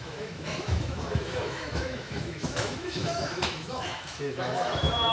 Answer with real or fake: fake